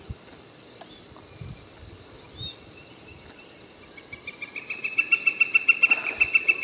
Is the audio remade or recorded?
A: recorded